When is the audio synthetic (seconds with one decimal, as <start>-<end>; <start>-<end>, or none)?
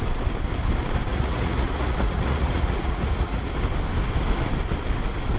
1.1-3.5